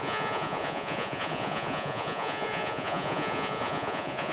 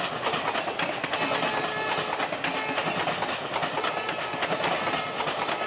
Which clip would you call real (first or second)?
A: second